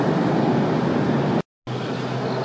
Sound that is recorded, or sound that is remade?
recorded